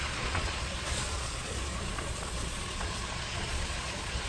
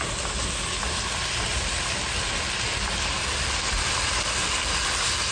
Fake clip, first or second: first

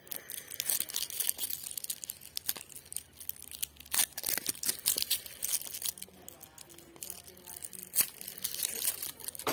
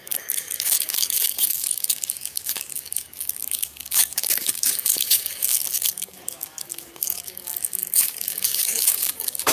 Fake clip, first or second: second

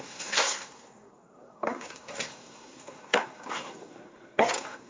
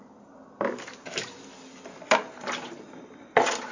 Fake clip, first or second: first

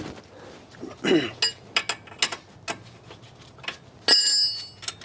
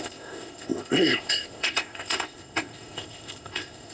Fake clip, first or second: second